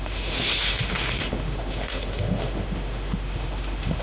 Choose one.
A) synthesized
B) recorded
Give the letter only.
A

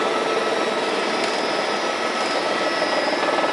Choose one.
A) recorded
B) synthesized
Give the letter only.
A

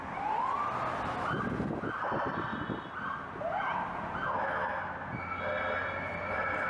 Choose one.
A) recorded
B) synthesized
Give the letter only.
A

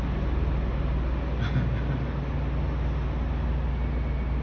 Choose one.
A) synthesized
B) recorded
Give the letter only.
B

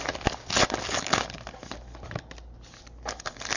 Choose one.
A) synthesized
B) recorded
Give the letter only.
B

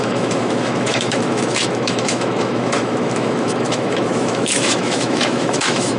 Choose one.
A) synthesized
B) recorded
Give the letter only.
A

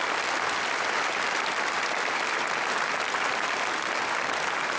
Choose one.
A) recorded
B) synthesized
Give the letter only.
A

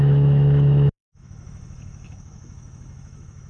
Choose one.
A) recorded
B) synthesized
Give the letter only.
B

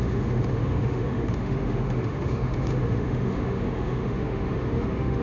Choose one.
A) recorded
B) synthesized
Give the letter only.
B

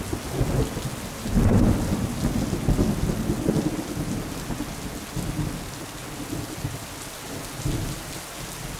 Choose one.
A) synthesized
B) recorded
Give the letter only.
B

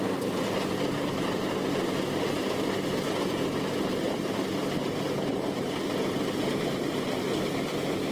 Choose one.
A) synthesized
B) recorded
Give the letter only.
B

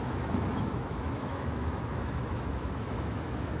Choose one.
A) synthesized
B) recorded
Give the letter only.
A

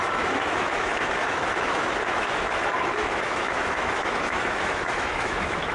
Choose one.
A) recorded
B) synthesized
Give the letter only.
B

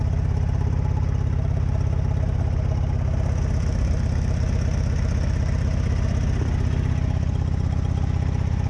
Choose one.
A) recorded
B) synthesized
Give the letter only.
A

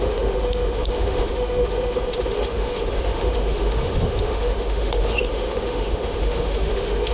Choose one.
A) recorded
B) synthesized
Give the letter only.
B